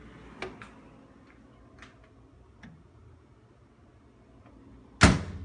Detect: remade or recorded recorded